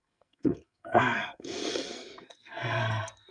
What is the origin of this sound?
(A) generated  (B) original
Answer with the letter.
A